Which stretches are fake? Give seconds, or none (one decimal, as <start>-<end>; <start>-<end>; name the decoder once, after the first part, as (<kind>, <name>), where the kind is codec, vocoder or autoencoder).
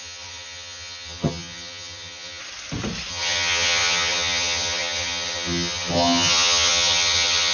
0.0-2.4 (vocoder, HiFi-GAN); 3.1-7.5